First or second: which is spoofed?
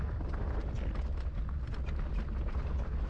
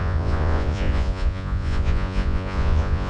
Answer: second